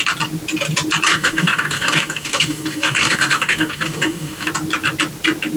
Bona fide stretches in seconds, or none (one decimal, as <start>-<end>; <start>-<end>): 0.0-1.1; 4.5-5.6